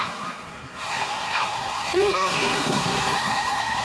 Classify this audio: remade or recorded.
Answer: remade